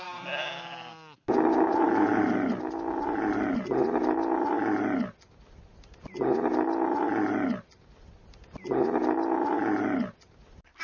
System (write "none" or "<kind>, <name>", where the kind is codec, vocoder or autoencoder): none